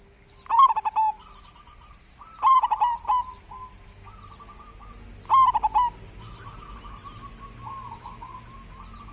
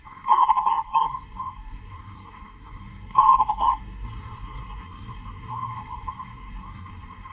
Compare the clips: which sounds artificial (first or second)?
second